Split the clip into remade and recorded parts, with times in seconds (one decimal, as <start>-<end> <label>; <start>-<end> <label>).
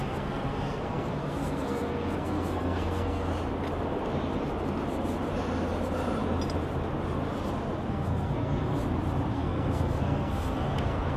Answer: 0.0-3.3 remade; 3.3-7.9 recorded; 7.9-8.8 remade; 8.8-9.3 recorded; 9.3-11.2 remade